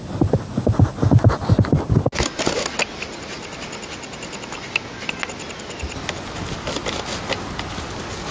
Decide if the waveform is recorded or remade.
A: recorded